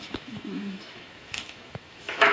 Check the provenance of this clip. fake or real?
fake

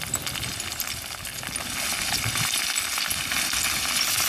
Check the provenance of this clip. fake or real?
real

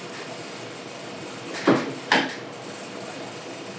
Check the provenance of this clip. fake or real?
real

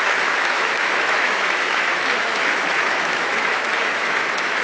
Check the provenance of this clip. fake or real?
fake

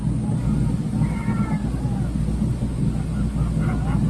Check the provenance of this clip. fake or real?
real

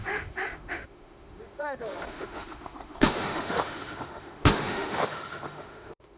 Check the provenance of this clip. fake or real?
fake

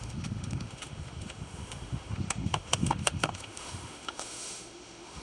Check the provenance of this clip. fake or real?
fake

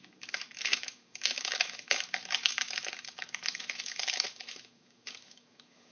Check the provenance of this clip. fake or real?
fake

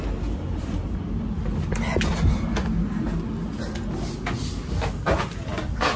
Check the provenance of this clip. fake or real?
real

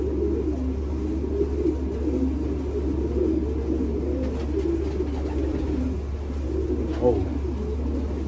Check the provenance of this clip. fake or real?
real